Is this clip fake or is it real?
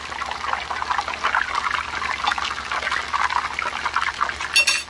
real